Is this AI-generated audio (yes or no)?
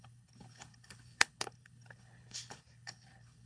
yes